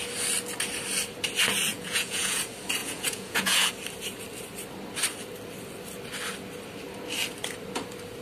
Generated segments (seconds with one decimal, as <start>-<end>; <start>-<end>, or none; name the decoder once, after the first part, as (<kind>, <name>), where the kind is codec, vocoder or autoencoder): 1.7-2.4 (vocoder, Vocos); 2.8-3.7